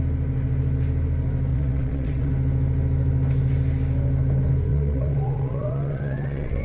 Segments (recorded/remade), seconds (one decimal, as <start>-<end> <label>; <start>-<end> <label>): 0.0-1.5 recorded; 1.5-2.3 remade; 2.3-4.7 recorded; 4.7-6.6 remade